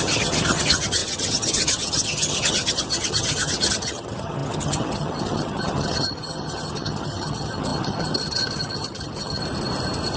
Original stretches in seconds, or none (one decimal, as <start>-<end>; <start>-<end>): 9.4-10.2